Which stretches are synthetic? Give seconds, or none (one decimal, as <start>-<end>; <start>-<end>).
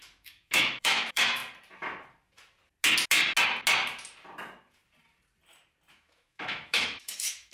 0.0-1.4; 5.9-7.5